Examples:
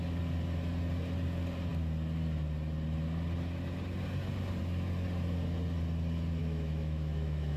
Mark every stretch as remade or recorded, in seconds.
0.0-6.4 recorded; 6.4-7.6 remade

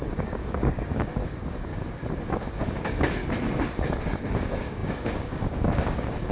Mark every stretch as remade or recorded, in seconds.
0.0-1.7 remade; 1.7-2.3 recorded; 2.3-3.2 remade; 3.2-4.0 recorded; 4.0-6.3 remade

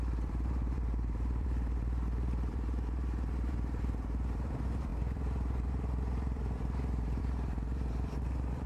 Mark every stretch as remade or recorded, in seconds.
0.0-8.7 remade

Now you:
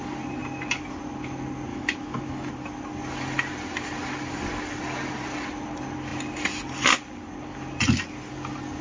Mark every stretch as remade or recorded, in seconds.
0.0-1.7 recorded; 1.7-2.5 remade; 2.5-8.8 recorded